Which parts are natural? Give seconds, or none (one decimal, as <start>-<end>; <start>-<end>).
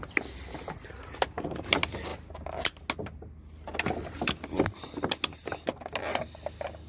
0.0-6.9